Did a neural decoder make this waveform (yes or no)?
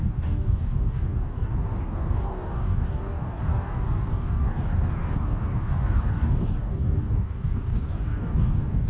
yes